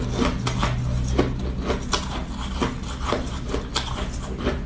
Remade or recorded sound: recorded